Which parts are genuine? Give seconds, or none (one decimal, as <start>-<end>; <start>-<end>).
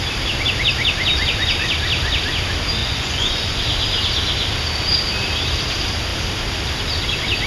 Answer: 0.0-2.8; 3.6-7.5